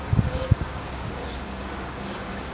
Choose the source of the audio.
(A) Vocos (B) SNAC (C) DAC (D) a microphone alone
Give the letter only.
C